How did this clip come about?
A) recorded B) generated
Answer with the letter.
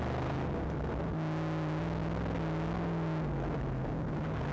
A